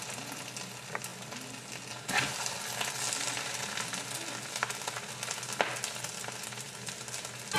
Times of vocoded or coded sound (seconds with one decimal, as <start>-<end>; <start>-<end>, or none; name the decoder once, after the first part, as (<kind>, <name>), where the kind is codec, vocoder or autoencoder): none